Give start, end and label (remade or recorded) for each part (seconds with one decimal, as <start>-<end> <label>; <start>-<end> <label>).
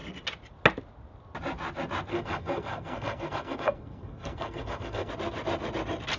0.0-2.1 recorded; 2.1-5.1 remade; 5.1-6.2 recorded